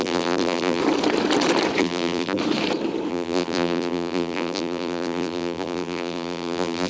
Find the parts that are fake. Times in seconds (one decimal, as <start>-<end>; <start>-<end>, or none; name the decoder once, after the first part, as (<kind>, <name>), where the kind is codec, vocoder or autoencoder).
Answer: 0.0-0.8 (vocoder, BigVGAN v2); 1.8-2.4; 3.1-6.9